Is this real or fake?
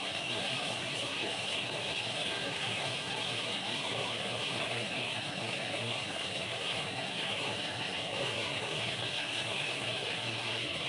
fake